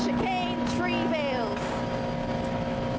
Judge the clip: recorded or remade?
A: recorded